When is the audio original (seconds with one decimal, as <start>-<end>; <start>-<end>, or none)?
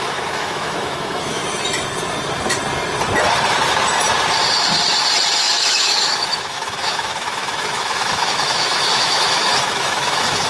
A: 1.4-5.4